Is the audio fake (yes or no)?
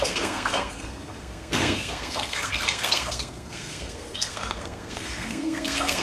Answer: yes